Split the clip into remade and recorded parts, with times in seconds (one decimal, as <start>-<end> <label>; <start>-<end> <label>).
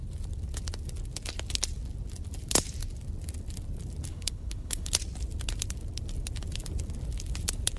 0.0-4.1 recorded; 4.1-4.9 remade; 4.9-7.8 recorded